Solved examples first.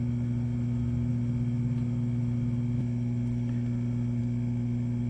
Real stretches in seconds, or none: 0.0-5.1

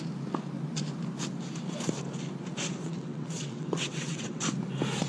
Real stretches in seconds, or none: 0.0-2.8; 4.4-5.1